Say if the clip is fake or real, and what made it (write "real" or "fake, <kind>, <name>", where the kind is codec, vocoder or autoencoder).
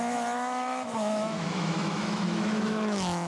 fake, autoencoder, DAC-VAE